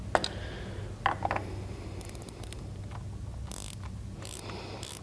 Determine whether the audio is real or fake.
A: real